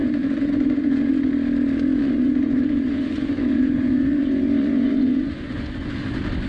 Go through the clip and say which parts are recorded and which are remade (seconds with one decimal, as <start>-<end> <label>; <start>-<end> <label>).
0.0-1.1 remade; 1.1-2.0 recorded; 2.0-5.9 remade; 5.9-6.5 recorded